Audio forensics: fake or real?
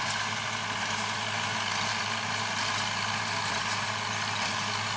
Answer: real